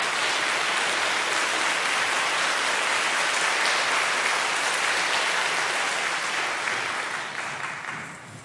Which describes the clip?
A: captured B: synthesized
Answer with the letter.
A